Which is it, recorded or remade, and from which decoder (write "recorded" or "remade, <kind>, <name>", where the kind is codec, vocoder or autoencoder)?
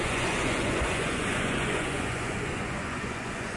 remade, vocoder, Vocos